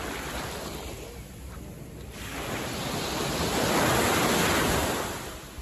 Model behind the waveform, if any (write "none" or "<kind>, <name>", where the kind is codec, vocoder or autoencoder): none